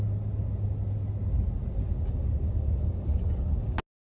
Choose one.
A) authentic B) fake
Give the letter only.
A